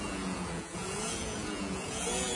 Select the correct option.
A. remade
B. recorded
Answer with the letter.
A